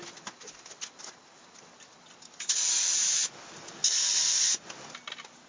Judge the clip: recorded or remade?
recorded